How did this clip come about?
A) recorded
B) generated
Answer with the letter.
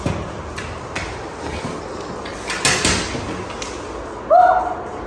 A